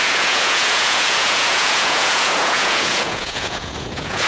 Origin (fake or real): fake